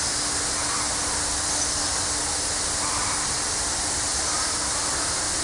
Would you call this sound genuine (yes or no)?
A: yes